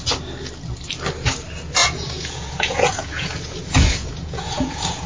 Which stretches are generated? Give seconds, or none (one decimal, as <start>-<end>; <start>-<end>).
1.8-5.1